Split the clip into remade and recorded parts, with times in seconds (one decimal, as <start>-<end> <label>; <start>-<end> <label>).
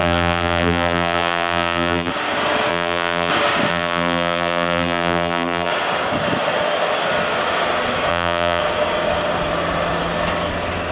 0.0-2.1 remade; 2.1-2.7 recorded; 2.7-3.3 remade; 3.3-3.7 recorded; 3.7-5.7 remade; 5.7-8.1 recorded; 8.1-8.6 remade; 8.6-10.9 recorded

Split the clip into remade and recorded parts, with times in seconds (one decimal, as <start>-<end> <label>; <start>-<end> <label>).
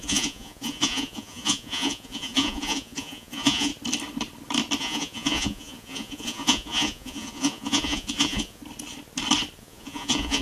0.0-3.7 remade; 3.7-4.8 recorded; 4.8-8.6 remade; 8.6-9.6 recorded; 9.6-10.4 remade